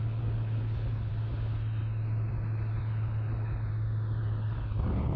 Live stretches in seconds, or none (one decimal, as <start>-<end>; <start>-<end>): 1.1-2.8; 3.7-4.2